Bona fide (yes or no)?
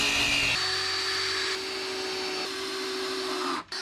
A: yes